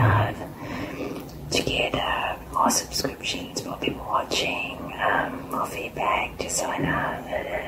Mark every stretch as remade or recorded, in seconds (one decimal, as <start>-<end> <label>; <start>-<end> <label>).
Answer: 0.0-7.7 remade